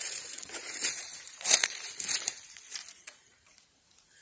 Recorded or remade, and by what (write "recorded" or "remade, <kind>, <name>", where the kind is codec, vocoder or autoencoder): remade, vocoder, Vocos